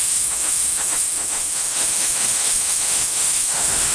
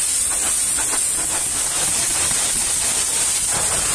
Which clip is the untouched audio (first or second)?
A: second